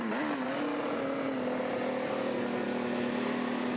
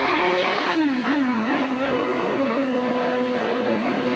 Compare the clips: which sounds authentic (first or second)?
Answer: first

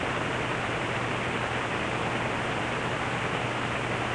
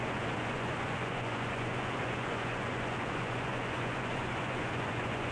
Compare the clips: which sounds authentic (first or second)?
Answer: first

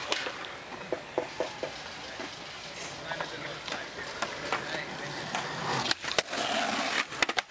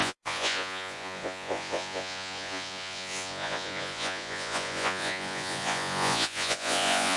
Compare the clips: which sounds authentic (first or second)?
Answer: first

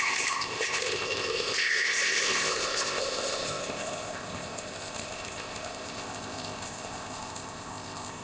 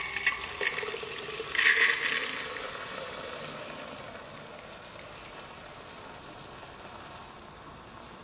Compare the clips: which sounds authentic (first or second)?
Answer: second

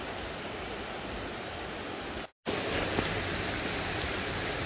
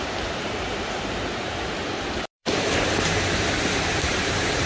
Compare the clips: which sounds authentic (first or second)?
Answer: first